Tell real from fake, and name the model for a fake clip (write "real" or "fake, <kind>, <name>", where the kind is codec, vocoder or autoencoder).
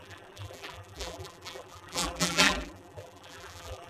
fake, vocoder, BigVGAN v2